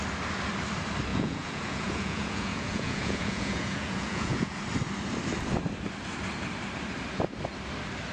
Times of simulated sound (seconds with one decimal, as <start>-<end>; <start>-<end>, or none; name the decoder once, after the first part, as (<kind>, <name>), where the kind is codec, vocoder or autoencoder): 1.1-4.6 (vocoder, Vocos)